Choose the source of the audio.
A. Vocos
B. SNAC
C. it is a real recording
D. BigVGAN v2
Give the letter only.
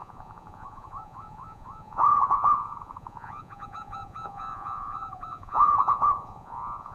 A